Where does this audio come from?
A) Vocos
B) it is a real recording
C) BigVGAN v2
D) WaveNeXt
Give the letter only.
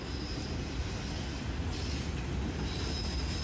B